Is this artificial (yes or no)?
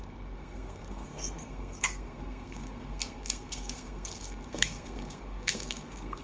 yes